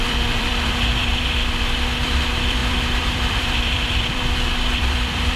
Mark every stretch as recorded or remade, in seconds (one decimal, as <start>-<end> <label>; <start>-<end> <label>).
0.0-5.4 remade